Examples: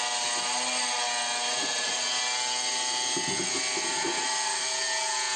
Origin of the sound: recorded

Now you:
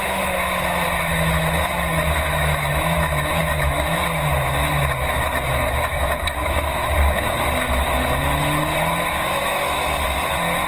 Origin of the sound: remade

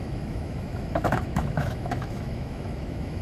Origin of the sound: remade